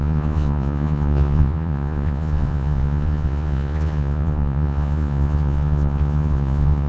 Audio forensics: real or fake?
fake